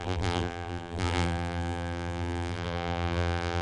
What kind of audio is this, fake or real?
fake